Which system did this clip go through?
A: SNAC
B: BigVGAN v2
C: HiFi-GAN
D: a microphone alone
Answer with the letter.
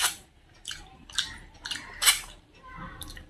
B